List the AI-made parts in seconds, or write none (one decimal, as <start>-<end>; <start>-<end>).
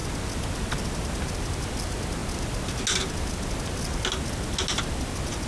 none